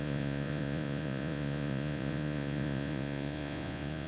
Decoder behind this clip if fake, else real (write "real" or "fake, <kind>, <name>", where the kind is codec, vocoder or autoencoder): fake, vocoder, Vocos